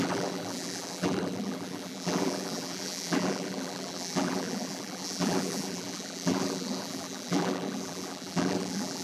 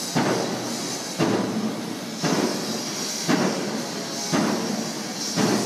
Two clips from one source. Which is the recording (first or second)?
second